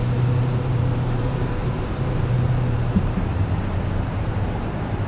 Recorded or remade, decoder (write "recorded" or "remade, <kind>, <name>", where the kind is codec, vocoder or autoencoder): remade, vocoder, BigVGAN v2